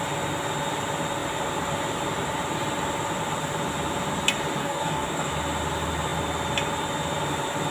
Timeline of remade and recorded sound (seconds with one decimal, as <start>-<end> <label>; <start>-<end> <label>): 0.0-4.6 recorded; 4.6-5.3 remade; 5.3-7.7 recorded